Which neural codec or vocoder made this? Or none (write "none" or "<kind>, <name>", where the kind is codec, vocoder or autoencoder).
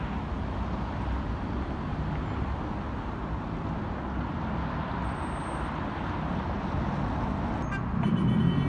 none